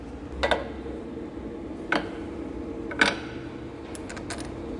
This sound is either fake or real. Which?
real